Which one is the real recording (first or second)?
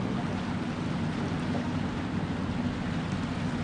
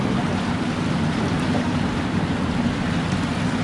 first